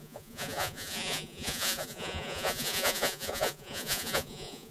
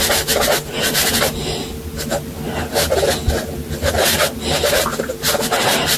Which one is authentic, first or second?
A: second